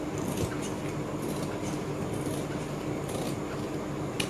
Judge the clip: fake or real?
real